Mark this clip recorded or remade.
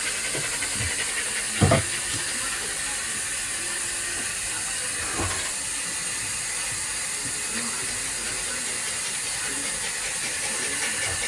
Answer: recorded